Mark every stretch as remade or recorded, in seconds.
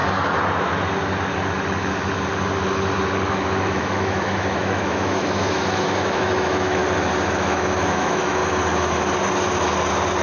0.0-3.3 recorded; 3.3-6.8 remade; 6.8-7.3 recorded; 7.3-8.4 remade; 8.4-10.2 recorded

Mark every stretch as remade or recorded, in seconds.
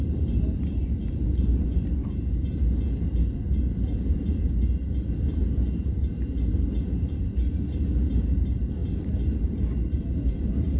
0.0-2.0 remade; 2.0-3.6 recorded; 3.6-10.8 remade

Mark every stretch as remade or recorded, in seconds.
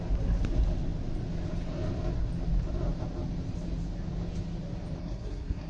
0.0-5.0 recorded; 5.0-5.7 remade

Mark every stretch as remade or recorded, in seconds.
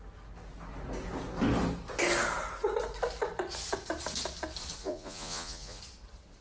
0.0-4.8 recorded; 4.8-5.8 remade; 5.8-6.4 recorded